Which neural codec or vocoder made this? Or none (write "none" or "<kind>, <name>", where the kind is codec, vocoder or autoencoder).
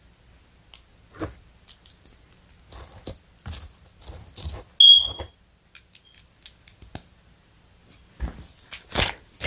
none